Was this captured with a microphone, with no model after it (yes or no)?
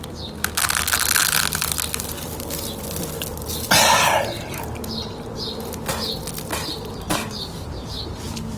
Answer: yes